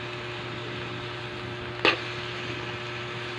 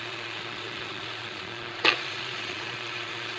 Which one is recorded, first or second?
first